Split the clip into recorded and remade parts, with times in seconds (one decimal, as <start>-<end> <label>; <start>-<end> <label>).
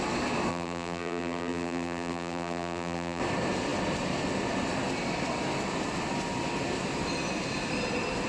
0.0-0.5 recorded; 0.5-3.2 remade; 3.2-8.3 recorded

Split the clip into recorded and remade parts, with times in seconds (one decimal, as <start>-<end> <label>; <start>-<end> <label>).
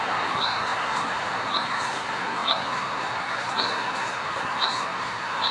0.0-5.5 remade